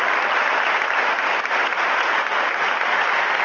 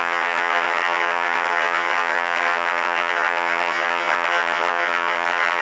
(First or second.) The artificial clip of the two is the second